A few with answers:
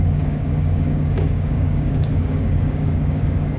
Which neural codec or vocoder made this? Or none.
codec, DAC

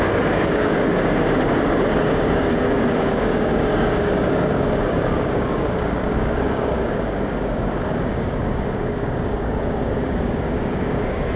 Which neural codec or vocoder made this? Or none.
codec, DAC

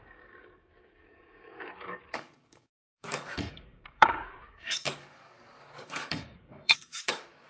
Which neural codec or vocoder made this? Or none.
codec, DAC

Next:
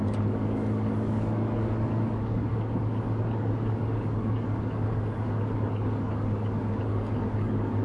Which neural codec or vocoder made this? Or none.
codec, DAC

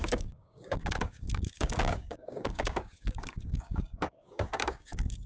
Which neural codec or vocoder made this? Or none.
codec, DAC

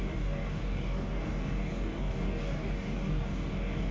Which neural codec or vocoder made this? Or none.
codec, DAC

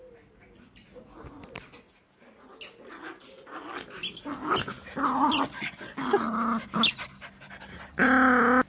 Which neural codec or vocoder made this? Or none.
none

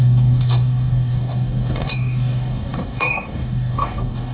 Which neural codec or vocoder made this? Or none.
codec, DAC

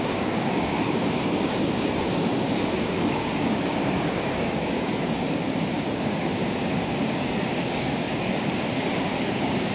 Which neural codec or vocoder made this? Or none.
codec, DAC